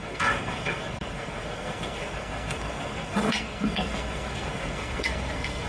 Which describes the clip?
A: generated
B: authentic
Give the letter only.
A